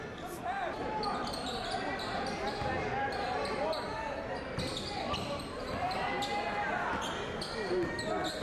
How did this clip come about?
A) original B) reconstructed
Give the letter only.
A